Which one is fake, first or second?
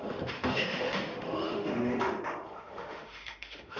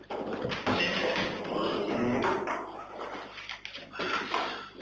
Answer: first